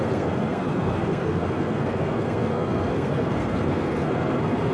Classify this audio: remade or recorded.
remade